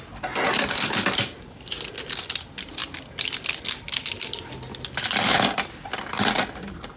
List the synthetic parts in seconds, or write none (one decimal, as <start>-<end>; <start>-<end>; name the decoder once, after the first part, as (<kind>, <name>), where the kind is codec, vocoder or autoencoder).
none